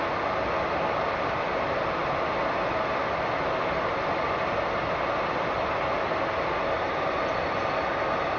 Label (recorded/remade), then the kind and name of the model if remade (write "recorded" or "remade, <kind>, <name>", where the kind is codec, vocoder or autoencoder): recorded